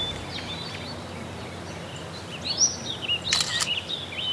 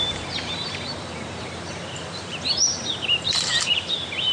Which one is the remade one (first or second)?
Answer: second